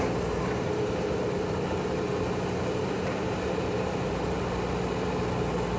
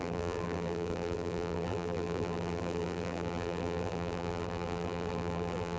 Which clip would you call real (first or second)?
first